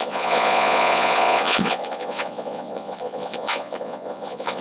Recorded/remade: remade